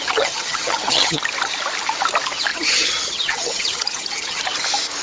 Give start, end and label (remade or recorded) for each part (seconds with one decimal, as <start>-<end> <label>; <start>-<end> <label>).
0.0-1.2 remade; 1.2-2.5 recorded; 2.5-4.4 remade; 4.4-5.0 recorded